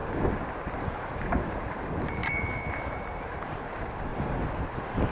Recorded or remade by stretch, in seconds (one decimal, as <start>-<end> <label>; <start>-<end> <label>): 0.0-0.7 recorded; 0.7-2.2 remade; 2.2-2.9 recorded; 2.9-4.1 remade; 4.1-4.6 recorded; 4.6-5.1 remade